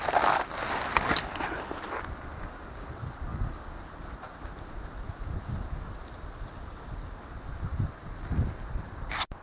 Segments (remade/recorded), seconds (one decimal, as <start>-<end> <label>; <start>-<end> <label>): 0.0-2.3 recorded; 2.3-2.9 remade; 2.9-3.3 recorded; 3.3-3.9 remade; 3.9-9.4 recorded

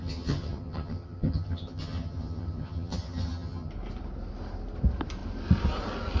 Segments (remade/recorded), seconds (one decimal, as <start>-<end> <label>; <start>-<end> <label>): 0.0-3.7 remade; 3.7-6.2 recorded

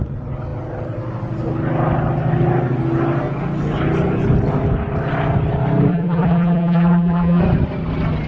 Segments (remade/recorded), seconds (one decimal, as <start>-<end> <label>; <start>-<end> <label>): 0.0-5.9 recorded; 5.9-7.4 remade; 7.4-8.3 recorded

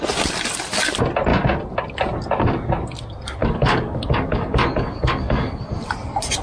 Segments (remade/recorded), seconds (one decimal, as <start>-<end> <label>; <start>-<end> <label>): 0.0-3.4 recorded; 3.4-5.6 remade; 5.6-6.4 recorded

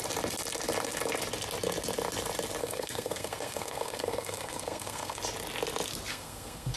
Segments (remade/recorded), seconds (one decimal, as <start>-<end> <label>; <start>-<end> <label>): 0.0-2.6 recorded; 2.6-5.2 remade; 5.2-6.1 recorded; 6.1-6.8 remade

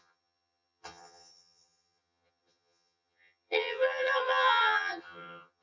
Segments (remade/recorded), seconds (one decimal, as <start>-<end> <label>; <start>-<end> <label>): 0.0-5.6 remade

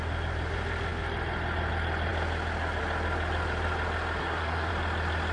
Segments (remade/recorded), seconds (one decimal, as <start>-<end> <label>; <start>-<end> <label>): 0.0-4.2 recorded; 4.2-4.7 remade; 4.7-5.3 recorded

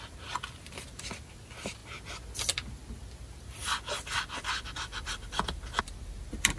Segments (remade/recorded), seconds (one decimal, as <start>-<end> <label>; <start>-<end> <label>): 0.0-6.6 recorded